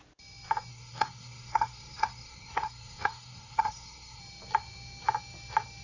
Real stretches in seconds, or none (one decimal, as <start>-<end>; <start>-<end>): 0.0-0.7; 4.2-5.8